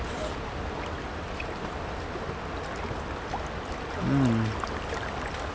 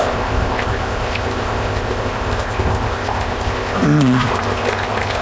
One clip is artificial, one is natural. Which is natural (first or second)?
first